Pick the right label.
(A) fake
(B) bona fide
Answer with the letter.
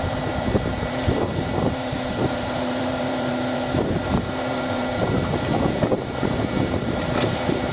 A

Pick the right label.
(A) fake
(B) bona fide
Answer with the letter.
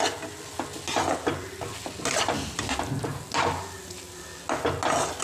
B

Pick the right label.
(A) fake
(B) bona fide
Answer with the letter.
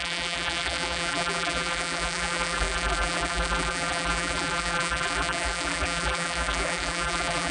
A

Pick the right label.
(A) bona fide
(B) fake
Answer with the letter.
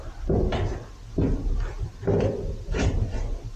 A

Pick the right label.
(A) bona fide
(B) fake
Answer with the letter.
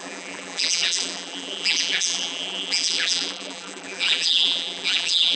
B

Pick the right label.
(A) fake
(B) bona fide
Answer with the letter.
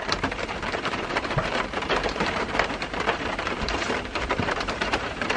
A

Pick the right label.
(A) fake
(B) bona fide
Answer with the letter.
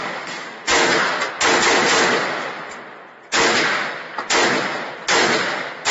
A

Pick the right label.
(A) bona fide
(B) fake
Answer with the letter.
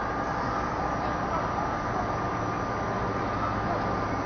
A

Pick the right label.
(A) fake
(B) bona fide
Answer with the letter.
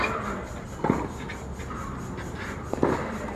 B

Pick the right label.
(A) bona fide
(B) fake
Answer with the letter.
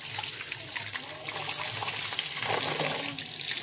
A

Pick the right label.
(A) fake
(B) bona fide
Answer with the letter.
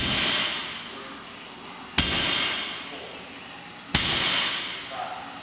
B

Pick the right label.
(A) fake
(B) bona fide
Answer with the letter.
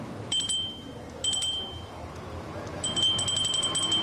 B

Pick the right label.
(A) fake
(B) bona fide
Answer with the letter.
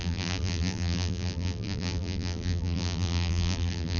A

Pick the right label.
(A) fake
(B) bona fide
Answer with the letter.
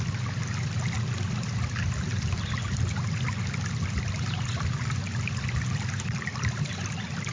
B